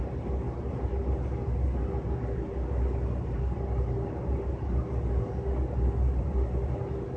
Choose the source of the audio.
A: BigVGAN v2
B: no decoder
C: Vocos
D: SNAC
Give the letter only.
B